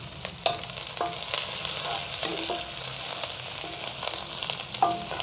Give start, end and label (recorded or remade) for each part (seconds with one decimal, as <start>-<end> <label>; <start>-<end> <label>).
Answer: 0.0-5.2 recorded